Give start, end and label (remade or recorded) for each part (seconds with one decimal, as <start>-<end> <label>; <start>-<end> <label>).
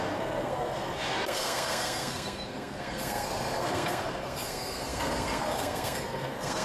0.0-6.6 remade